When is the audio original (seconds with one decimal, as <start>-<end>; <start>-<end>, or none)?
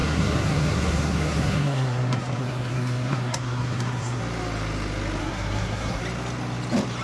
4.2-5.2; 6.0-7.0